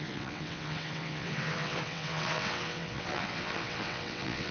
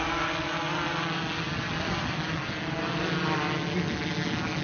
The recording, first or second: second